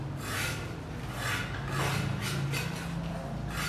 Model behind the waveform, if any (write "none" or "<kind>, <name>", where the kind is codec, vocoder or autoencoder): none